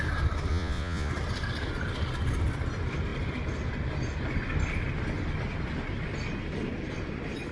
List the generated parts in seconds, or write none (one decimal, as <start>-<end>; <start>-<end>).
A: 0.5-1.1